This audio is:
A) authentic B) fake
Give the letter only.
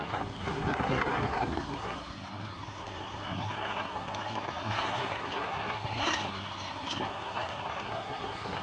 B